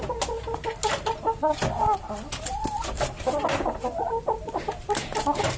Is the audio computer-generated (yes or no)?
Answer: no